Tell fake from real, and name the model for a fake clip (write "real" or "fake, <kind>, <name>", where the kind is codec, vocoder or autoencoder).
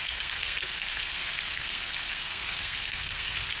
fake, codec, SNAC